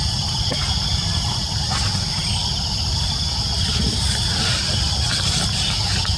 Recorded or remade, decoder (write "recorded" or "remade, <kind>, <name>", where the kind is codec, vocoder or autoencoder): recorded